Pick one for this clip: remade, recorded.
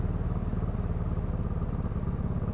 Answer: recorded